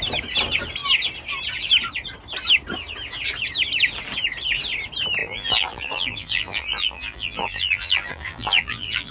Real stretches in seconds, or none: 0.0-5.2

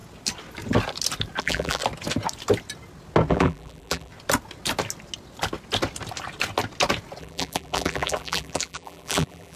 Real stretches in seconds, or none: 0.0-1.4; 1.8-3.3; 4.1-7.2

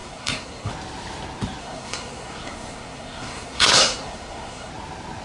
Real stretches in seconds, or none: 0.7-1.6; 4.7-5.2

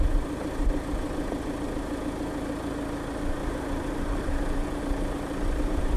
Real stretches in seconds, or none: 0.0-3.4

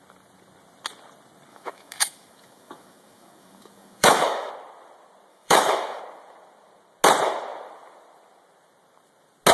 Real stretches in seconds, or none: 0.0-1.5; 4.5-5.3; 6.0-9.5

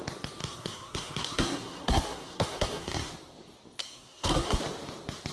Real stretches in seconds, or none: 0.0-0.4; 3.1-3.8; 4.6-5.3